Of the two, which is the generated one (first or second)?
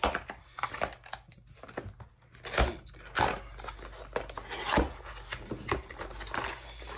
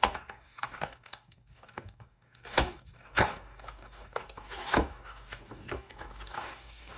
second